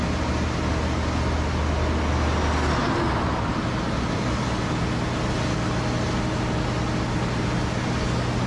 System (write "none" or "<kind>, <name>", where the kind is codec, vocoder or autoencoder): none